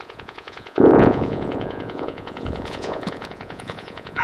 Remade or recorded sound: remade